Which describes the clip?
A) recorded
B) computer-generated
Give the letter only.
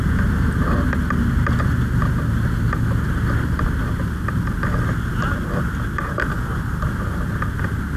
A